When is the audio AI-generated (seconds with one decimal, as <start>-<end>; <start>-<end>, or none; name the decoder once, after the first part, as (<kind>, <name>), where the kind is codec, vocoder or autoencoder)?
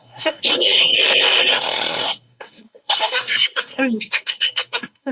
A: 0.0-0.9 (codec, SNAC); 1.4-5.1